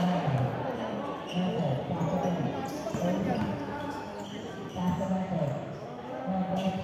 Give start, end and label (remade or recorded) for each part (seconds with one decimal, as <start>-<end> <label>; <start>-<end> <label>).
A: 0.0-0.5 remade; 0.5-3.4 recorded; 3.4-4.1 remade; 4.1-4.7 recorded; 4.7-6.8 remade